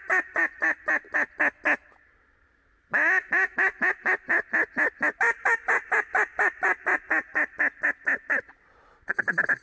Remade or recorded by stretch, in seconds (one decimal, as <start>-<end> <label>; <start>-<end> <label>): 0.0-9.6 recorded